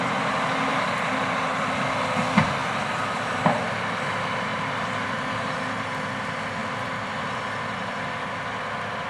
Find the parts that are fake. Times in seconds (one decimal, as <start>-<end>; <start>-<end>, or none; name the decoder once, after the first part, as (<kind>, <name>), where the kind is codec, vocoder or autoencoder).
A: 4.5-5.7 (vocoder, BigVGAN v2)